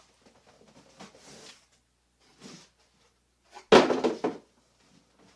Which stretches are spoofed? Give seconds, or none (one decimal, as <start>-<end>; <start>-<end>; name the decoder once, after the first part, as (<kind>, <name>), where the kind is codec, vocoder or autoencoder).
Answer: none